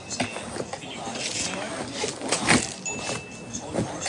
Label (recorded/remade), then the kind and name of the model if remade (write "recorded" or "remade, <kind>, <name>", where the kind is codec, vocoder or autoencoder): recorded